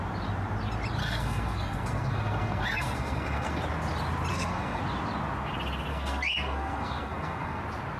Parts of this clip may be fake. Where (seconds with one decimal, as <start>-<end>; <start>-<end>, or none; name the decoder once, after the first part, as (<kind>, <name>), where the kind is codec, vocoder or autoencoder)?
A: 1.0-3.6 (codec, SNAC); 4.3-4.8; 5.9-7.6

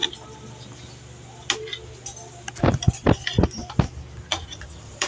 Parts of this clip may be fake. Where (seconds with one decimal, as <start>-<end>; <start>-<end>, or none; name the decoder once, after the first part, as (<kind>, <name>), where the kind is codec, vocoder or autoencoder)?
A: 4.3-5.1 (vocoder, Vocos)

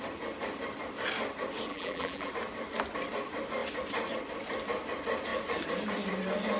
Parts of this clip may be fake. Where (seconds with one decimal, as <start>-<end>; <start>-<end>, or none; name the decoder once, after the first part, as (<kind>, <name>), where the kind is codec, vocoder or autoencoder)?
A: 1.7-2.3 (vocoder, BigVGAN v2)

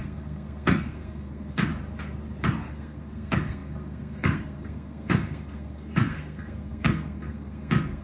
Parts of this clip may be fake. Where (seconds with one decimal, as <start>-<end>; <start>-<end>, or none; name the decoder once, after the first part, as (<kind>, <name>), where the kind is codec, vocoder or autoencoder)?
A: 0.0-1.7 (codec, SNAC); 2.7-8.0